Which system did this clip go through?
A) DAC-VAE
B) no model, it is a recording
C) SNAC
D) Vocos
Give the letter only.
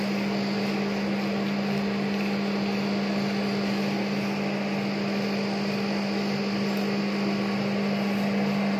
B